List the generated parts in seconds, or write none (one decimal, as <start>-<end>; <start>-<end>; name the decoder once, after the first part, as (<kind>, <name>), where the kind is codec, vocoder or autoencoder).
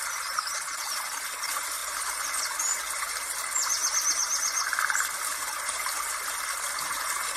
none